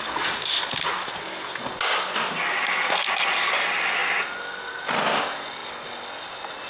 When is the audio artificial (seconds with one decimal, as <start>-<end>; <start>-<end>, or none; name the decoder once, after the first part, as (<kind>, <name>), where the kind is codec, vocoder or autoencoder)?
none